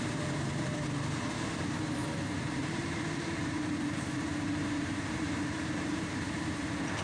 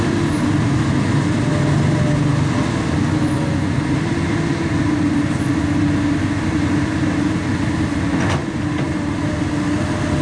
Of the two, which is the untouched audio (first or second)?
second